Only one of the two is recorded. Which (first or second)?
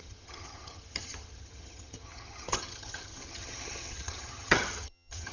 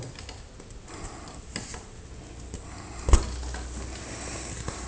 second